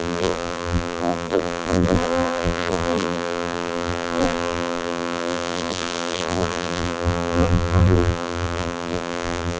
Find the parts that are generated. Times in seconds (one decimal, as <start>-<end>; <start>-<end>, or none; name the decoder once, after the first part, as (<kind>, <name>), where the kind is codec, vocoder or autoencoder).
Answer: 0.0-9.6 (vocoder, BigVGAN v2)